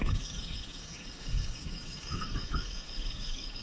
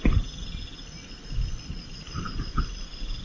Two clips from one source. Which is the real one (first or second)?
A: second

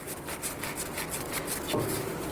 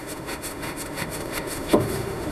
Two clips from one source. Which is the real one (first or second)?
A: first